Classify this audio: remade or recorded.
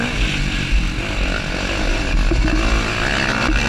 recorded